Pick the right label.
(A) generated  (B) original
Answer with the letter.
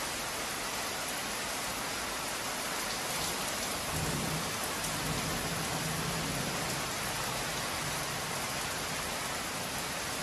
B